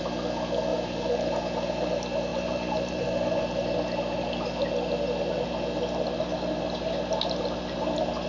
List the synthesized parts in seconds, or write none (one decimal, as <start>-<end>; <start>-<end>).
0.7-1.3; 2.3-3.4